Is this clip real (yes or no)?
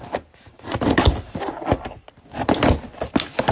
yes